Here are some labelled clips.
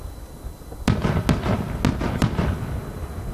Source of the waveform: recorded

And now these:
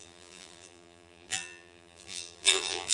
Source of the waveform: remade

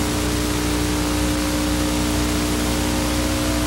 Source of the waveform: recorded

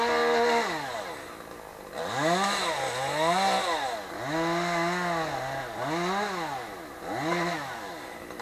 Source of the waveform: recorded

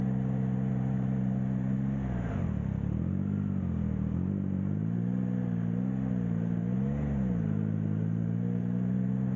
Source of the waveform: recorded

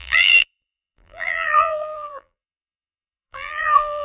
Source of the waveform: remade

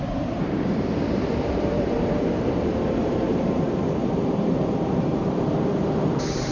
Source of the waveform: remade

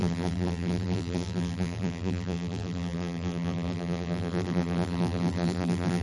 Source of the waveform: remade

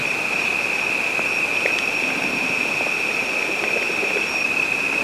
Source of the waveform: recorded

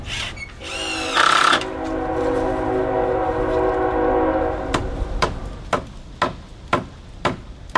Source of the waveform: recorded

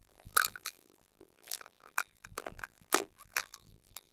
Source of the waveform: remade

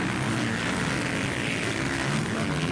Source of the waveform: recorded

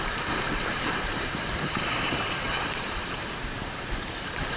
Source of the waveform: remade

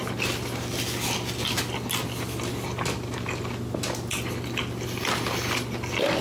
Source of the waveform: recorded